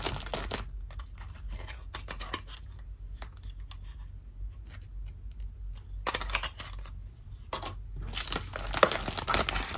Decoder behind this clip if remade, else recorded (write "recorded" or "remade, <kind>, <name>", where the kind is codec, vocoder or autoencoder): recorded